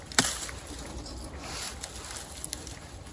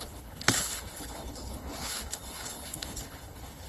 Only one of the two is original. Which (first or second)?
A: first